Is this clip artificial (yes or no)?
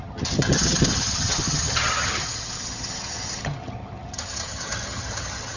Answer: yes